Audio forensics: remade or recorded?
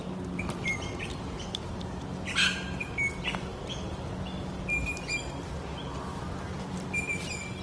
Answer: recorded